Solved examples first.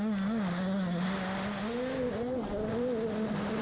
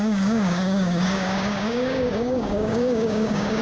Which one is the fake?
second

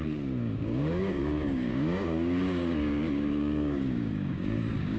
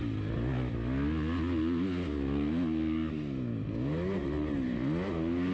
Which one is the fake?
first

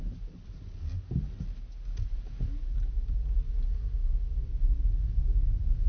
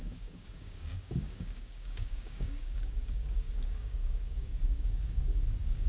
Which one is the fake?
second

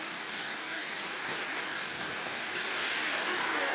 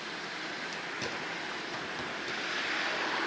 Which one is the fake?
first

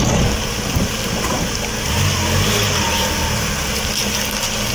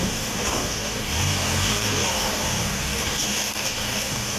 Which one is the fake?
second